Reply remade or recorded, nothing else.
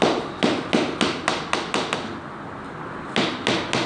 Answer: recorded